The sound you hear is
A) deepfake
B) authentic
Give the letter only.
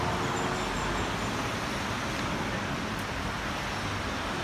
B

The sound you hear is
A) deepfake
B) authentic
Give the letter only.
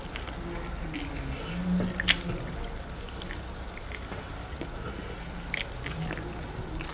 B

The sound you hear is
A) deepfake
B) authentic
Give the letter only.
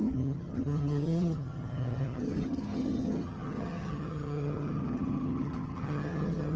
A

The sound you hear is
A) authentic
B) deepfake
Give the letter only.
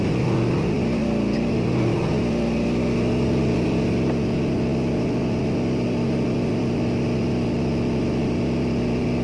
A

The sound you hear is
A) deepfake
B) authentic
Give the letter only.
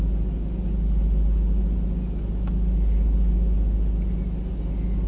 B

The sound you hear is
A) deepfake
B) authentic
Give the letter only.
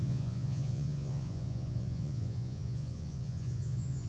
A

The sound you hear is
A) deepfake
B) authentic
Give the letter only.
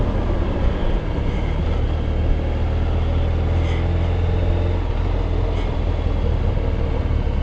B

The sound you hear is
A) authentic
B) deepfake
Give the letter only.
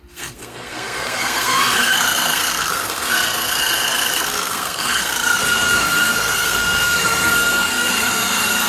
B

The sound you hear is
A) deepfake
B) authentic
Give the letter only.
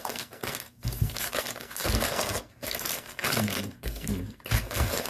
A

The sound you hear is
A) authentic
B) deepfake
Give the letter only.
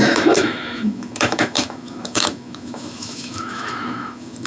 B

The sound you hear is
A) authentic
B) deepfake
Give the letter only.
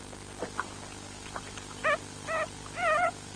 A